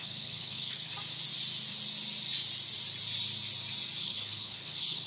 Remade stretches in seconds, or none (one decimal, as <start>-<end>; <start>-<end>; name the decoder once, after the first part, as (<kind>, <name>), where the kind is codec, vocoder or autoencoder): 0.0-0.9 (codec, HILCodec); 4.0-5.1